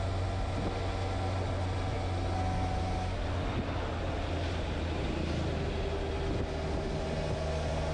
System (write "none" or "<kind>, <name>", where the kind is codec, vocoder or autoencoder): none